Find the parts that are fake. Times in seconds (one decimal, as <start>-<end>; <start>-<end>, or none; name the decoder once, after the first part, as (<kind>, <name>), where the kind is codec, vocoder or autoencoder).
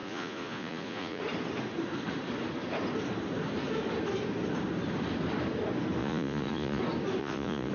0.0-1.2 (vocoder, Vocos); 6.0-6.8; 7.2-7.7